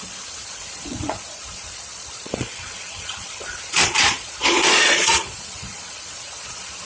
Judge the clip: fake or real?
fake